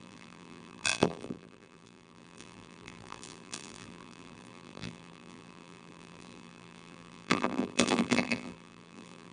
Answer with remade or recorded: remade